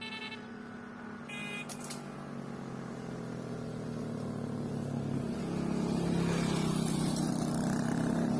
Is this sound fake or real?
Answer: real